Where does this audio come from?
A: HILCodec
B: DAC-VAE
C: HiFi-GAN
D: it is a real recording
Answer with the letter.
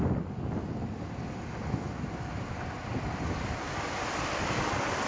D